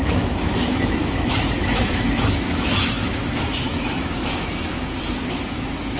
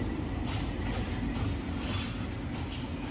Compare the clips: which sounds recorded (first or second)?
second